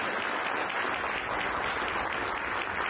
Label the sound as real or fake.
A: real